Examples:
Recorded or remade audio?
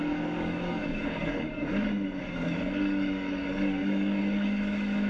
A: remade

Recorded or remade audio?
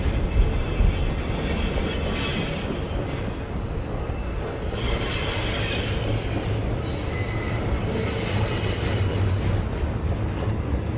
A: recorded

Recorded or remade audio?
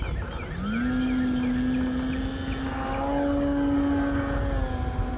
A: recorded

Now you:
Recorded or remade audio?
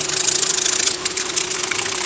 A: recorded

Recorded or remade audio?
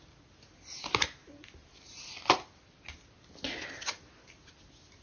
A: recorded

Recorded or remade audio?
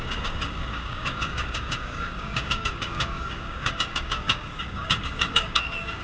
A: remade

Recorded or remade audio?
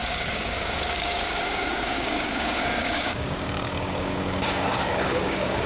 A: remade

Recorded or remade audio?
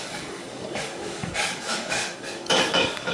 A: remade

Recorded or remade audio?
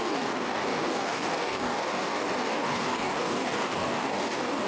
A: remade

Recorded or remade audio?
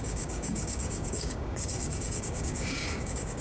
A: remade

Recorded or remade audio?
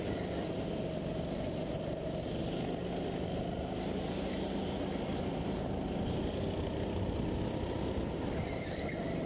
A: recorded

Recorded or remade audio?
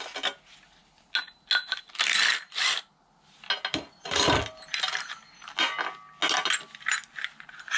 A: recorded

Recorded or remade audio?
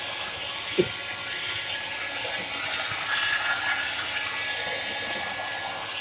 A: recorded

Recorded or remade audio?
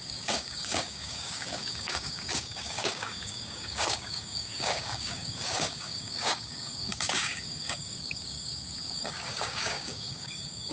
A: remade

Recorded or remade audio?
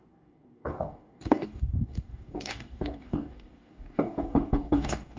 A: remade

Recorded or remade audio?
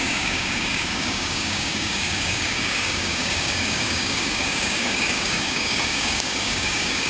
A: remade